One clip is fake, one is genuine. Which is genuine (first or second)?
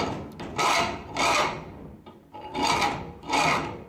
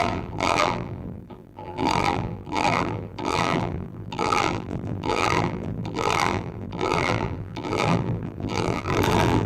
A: first